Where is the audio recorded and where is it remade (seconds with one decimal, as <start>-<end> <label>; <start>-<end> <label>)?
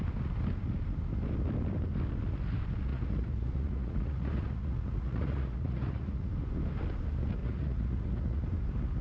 0.0-2.9 recorded; 2.9-6.3 remade; 6.3-7.4 recorded; 7.4-8.4 remade; 8.4-9.0 recorded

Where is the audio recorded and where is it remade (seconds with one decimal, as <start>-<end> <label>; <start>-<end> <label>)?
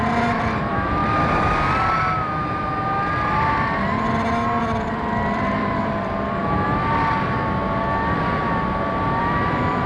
0.0-1.0 remade; 1.0-4.6 recorded; 4.6-6.4 remade; 6.4-9.2 recorded; 9.2-9.9 remade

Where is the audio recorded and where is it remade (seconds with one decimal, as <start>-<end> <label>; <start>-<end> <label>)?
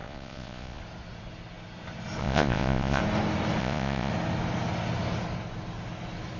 0.0-0.8 remade; 0.8-2.2 recorded; 2.2-3.0 remade; 3.0-3.6 recorded; 3.6-4.1 remade; 4.1-6.4 recorded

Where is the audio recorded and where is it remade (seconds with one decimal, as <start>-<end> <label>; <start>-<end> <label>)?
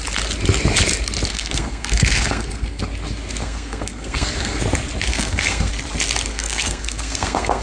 0.0-1.3 recorded; 1.3-2.8 remade; 2.8-3.4 recorded; 3.4-4.6 remade; 4.6-5.1 recorded; 5.1-5.7 remade; 5.7-6.3 recorded; 6.3-7.6 remade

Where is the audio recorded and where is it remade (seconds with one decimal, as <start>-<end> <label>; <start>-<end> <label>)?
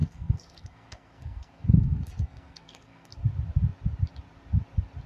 0.0-3.1 remade; 3.1-5.1 recorded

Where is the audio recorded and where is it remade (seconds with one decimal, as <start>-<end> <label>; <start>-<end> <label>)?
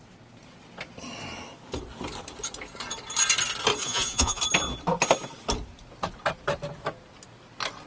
0.0-3.8 recorded; 3.8-4.4 remade; 4.4-7.9 recorded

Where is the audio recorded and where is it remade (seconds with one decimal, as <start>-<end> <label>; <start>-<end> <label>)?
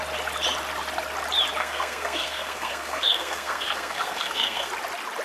0.0-1.6 recorded; 1.6-4.7 remade; 4.7-5.2 recorded